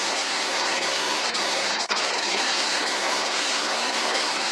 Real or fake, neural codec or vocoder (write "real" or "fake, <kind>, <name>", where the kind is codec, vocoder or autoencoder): fake, codec, SNAC